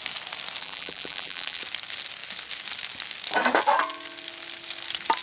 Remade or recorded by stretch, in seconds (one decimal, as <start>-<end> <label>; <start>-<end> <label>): 0.0-0.6 recorded; 0.6-1.6 remade; 1.6-5.2 recorded